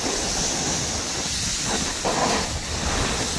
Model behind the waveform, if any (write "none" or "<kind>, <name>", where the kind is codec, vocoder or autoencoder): none